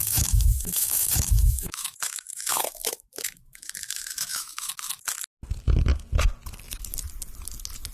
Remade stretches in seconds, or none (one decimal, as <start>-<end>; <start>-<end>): 0.0-4.7